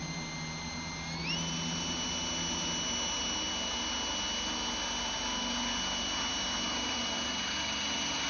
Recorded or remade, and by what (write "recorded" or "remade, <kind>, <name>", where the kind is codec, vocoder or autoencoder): recorded